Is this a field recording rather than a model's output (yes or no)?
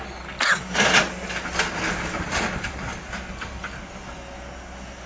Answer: yes